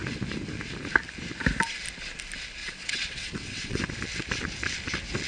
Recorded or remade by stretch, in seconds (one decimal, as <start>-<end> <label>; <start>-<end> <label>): 0.0-2.6 recorded; 2.6-3.8 remade; 3.8-5.3 recorded